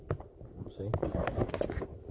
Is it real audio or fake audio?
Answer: real